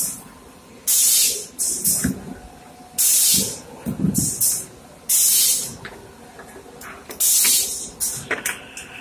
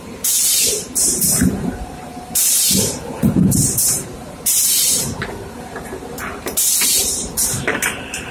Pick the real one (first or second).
first